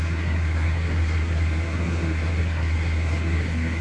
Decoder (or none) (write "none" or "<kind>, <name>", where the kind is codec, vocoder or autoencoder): codec, SNAC